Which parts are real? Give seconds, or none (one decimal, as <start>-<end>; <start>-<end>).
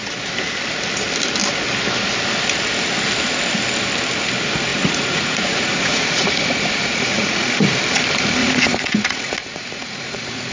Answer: 0.0-4.7; 7.5-8.4